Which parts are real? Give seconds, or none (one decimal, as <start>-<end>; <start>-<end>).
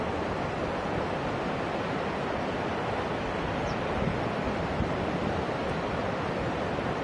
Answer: 0.0-7.0